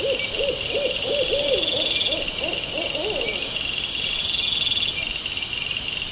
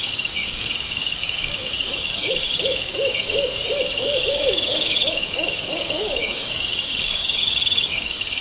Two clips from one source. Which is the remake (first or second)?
second